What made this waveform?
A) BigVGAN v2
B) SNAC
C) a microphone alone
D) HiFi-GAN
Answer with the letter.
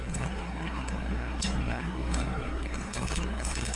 B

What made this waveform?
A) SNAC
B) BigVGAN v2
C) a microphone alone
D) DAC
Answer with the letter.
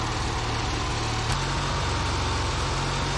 C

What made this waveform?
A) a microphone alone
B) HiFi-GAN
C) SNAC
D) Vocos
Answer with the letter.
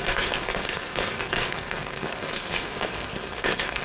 C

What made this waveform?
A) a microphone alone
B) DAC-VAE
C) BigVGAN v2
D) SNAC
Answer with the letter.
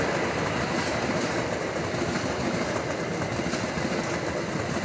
A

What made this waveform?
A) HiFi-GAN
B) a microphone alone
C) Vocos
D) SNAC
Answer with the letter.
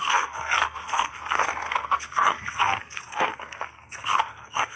D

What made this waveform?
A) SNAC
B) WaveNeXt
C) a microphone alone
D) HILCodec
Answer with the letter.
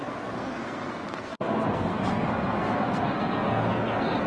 A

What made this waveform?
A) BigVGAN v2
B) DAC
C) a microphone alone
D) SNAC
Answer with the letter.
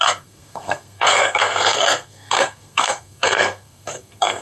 D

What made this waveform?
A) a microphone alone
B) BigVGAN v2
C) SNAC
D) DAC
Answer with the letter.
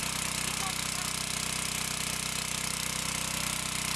A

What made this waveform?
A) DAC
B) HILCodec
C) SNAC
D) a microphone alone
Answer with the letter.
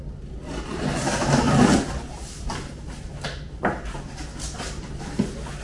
D